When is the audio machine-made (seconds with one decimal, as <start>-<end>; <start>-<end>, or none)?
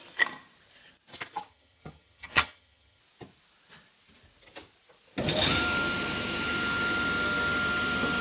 1.5-3.0